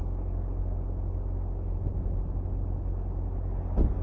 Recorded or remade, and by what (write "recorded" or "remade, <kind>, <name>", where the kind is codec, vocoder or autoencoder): recorded